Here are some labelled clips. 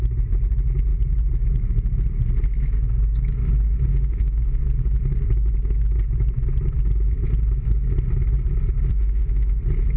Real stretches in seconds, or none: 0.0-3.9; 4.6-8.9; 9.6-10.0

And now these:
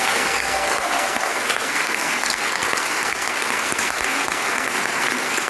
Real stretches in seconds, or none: none

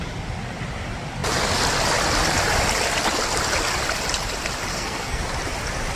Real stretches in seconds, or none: 0.0-4.7; 5.2-6.0

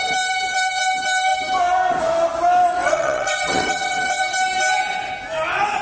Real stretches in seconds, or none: 0.0-2.8; 4.2-5.8